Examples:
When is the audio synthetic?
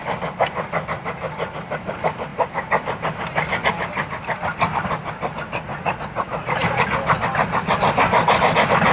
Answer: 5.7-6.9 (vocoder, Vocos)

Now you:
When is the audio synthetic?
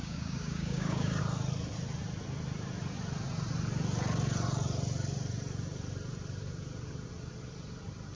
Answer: 0.0-1.2 (codec, DAC)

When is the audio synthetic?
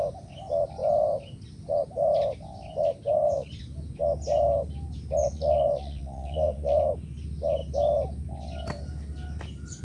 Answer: 3.0-3.5 (vocoder, Vocos); 5.2-6.9